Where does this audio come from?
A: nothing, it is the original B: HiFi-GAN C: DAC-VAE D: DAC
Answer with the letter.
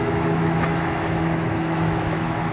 C